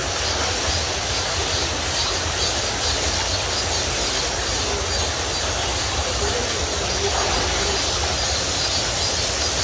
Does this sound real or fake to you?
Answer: real